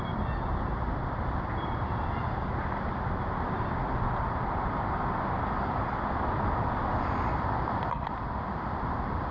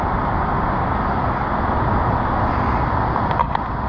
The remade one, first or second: first